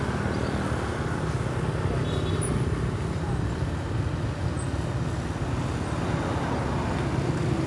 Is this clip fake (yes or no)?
no